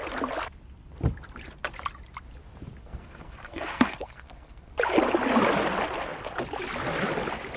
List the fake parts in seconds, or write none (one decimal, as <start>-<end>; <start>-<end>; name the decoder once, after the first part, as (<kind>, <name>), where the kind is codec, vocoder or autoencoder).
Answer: 2.8-4.7 (codec, SNAC)